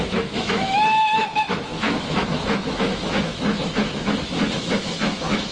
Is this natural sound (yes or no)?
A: no